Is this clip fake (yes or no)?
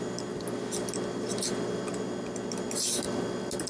no